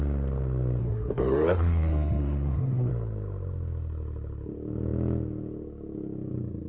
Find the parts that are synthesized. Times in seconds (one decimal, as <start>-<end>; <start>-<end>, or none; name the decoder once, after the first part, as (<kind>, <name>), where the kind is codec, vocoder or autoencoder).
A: 0.8-2.9 (codec, SNAC)